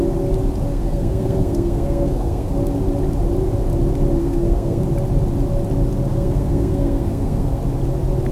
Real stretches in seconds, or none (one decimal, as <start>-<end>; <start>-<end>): 0.0-0.7; 2.5-4.2; 4.8-6.1; 7.6-8.3